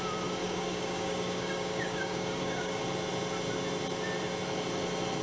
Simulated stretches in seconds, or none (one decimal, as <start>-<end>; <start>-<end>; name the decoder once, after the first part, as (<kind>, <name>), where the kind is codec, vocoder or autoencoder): 0.4-2.8 (codec, DAC)